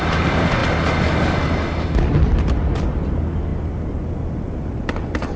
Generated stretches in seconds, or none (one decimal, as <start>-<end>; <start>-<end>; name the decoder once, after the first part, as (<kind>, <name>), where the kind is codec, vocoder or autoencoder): none